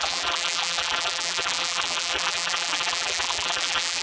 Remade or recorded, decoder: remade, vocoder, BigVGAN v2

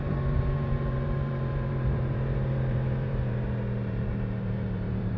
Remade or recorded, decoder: remade, vocoder, BigVGAN v2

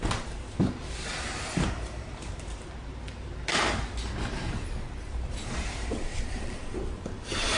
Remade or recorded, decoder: remade, vocoder, BigVGAN v2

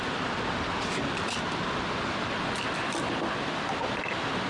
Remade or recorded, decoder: recorded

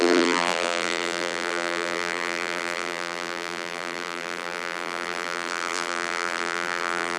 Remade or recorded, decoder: remade, vocoder, BigVGAN v2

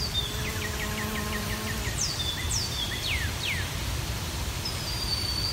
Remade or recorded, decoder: recorded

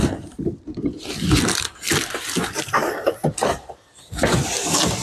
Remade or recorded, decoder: remade, vocoder, BigVGAN v2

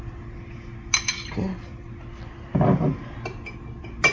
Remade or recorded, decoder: recorded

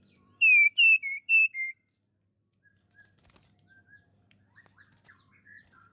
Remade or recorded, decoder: remade, vocoder, BigVGAN v2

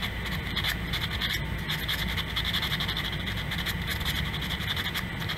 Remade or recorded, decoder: recorded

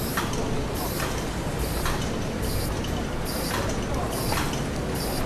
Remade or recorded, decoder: recorded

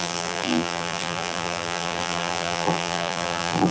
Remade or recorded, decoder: remade, vocoder, BigVGAN v2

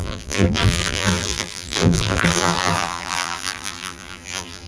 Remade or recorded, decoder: remade, vocoder, BigVGAN v2